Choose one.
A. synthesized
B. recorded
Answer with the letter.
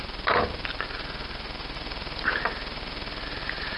B